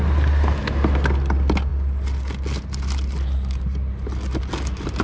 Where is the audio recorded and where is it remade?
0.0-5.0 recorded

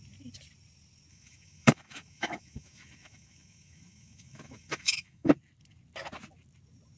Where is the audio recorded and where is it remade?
0.0-1.1 recorded; 1.1-5.3 remade; 5.3-7.0 recorded

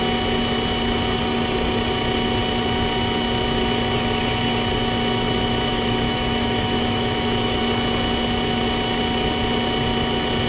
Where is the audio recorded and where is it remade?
0.0-5.7 recorded; 5.7-7.6 remade; 7.6-10.5 recorded